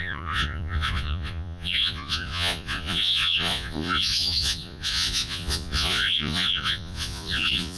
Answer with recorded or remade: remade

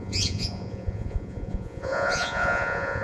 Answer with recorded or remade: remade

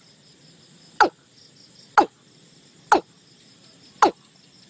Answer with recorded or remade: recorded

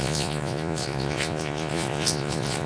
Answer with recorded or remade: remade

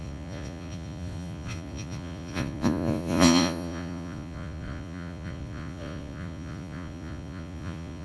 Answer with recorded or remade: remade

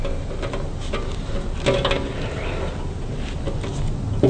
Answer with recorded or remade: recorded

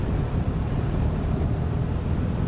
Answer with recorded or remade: recorded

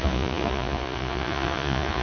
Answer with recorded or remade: remade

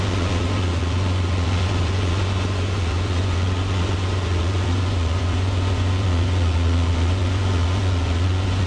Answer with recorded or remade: remade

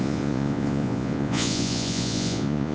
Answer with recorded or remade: remade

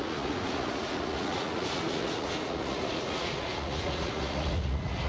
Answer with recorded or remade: remade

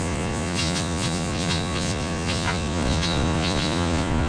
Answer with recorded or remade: remade